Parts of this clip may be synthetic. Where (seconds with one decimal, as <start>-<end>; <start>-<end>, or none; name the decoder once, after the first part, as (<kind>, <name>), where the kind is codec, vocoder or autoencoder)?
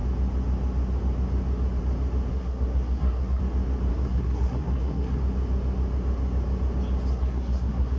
2.3-3.4 (codec, SNAC); 3.9-5.2; 7.1-8.0